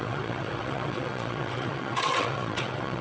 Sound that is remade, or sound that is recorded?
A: remade